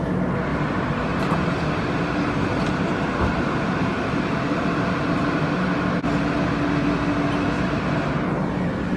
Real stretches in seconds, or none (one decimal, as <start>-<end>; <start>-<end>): 0.0-0.5; 5.4-9.0